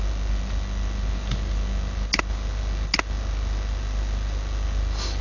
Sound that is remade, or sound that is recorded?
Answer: recorded